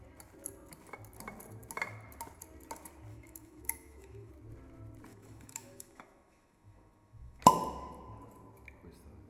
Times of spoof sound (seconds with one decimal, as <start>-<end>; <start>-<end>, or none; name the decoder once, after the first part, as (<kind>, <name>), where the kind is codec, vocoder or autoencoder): 3.1-4.3 (autoencoder, DAC-VAE); 5.1-7.4

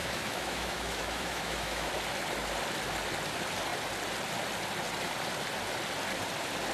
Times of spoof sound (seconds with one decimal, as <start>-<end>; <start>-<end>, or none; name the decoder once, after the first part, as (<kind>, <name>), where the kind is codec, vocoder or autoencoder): 0.0-1.9 (autoencoder, DAC-VAE)

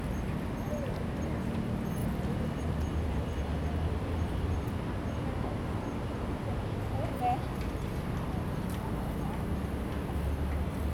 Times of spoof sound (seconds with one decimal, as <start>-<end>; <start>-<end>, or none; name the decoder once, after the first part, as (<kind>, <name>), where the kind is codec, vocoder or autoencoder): none

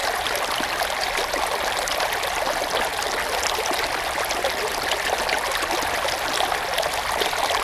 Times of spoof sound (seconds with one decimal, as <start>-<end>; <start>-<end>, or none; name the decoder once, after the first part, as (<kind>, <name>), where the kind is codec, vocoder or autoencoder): none

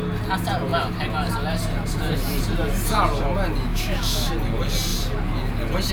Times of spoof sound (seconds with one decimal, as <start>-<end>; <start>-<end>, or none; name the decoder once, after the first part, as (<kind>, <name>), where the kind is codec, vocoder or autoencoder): 3.7-4.3 (autoencoder, DAC-VAE)

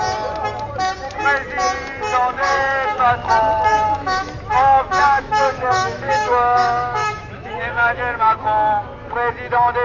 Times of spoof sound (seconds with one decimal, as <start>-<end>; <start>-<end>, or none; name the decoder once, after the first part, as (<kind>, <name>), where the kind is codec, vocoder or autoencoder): 2.1-3.3 (autoencoder, DAC-VAE); 3.7-8.4

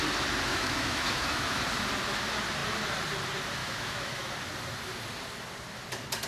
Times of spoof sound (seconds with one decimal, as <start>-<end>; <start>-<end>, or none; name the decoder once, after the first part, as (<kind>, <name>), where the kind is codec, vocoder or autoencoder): 0.5-1.6 (autoencoder, DAC-VAE); 3.6-4.3

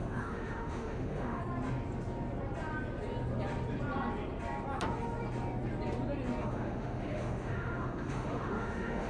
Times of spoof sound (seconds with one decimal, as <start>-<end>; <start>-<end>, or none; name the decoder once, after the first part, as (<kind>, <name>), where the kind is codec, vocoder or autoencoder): 0.0-1.4 (autoencoder, DAC-VAE); 6.4-9.1